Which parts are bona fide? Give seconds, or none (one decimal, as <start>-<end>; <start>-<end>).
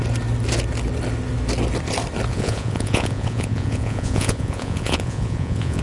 0.0-2.3